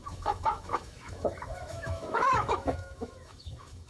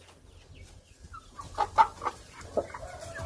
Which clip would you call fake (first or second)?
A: first